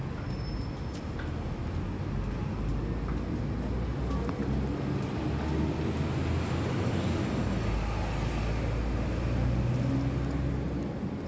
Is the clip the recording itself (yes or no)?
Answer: yes